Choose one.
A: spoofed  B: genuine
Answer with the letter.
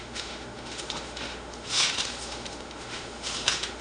A